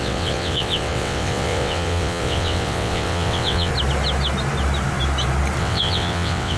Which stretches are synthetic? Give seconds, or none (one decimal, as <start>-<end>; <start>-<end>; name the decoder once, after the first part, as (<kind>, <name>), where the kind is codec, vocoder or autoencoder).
0.0-3.7 (vocoder, WaveNeXt); 5.6-6.6